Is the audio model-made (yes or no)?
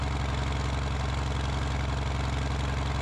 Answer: no